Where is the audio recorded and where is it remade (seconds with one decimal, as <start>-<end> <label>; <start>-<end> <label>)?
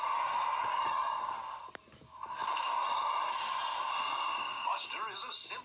0.0-5.6 recorded